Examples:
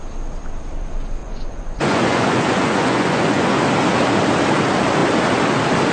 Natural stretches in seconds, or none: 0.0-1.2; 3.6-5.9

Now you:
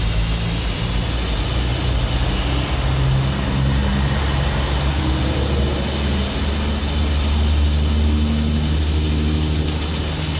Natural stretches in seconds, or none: 0.0-10.4

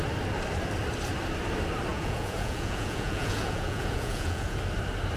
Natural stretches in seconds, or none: 0.0-1.9; 4.6-5.2